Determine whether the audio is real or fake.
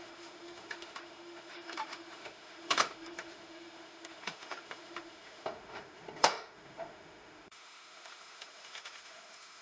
fake